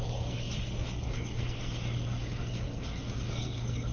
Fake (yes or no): yes